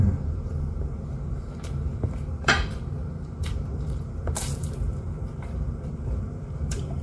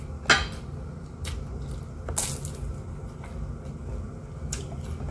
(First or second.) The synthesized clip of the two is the first